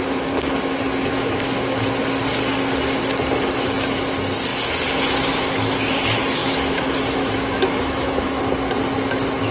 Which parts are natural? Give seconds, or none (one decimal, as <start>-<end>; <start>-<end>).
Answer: 0.0-1.1; 1.8-6.4; 8.4-9.5